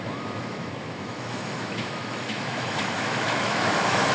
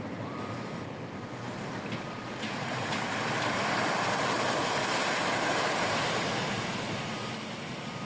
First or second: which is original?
second